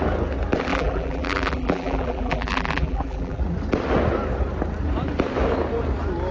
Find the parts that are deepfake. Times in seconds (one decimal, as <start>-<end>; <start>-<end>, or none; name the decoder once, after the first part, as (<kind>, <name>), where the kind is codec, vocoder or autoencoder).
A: 0.7-3.4 (vocoder, BigVGAN v2)